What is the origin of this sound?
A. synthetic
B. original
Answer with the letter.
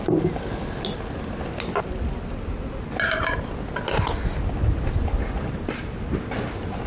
B